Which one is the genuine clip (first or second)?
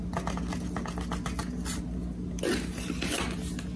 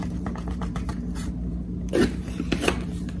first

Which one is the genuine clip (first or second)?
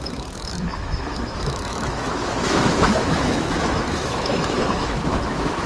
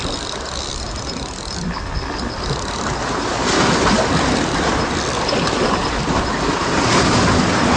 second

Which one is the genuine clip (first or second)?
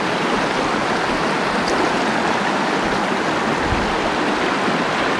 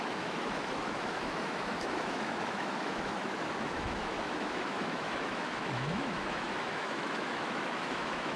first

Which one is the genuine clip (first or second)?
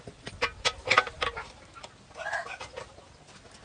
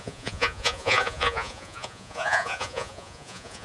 first